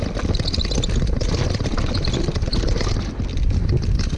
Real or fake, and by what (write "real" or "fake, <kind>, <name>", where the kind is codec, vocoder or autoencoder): real